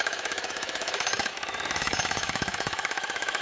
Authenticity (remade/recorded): remade